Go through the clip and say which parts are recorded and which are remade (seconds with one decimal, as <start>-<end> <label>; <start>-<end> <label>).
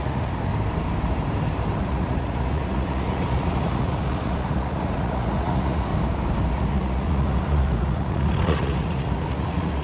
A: 0.0-0.5 remade; 0.5-1.8 recorded; 1.8-5.9 remade; 5.9-6.5 recorded; 6.5-9.8 remade